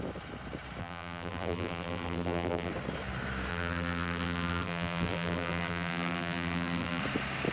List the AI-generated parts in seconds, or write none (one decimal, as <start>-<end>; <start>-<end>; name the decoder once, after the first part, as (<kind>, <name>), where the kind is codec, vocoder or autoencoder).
0.8-2.7 (vocoder, BigVGAN v2); 3.5-7.0